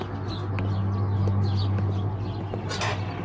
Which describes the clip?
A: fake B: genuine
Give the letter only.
B